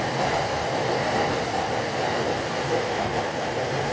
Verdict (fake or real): fake